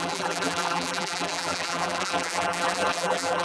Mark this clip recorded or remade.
remade